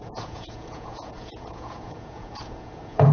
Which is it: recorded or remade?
remade